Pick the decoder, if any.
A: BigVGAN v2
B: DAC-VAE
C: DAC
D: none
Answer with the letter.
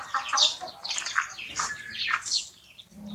D